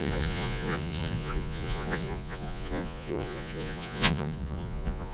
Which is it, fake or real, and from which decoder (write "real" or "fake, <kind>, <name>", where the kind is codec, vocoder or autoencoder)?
fake, vocoder, Vocos